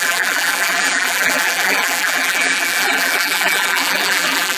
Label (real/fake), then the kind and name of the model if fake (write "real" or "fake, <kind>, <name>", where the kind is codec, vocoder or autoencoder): fake, vocoder, BigVGAN v2